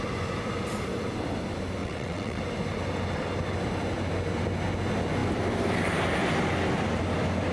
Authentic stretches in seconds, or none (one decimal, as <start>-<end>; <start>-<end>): 0.0-1.8; 2.4-7.5